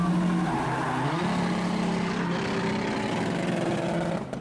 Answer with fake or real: real